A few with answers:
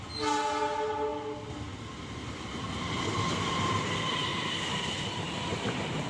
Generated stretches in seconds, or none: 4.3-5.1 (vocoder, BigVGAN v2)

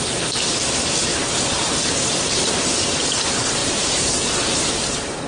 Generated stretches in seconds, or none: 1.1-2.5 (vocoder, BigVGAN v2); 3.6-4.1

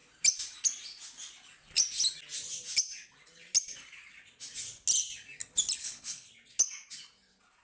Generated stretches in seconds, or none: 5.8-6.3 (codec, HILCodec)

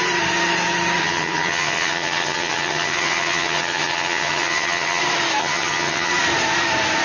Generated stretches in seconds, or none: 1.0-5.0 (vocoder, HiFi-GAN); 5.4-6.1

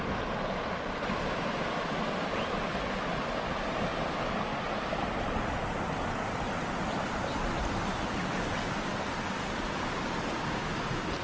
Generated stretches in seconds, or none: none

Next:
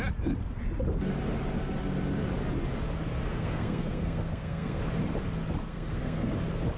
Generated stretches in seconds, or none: 3.3-4.8 (codec, SNAC); 5.7-6.3